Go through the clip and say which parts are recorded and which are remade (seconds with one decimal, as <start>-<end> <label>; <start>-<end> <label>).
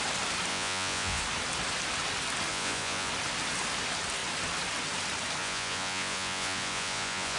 0.0-0.5 recorded; 0.5-1.2 remade; 1.2-2.5 recorded; 2.5-3.1 remade; 3.1-5.4 recorded; 5.4-7.4 remade